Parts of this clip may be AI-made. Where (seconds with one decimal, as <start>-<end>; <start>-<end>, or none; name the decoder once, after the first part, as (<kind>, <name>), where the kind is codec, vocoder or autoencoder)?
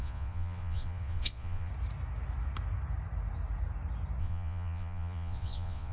0.0-1.7 (vocoder, Vocos); 4.2-5.9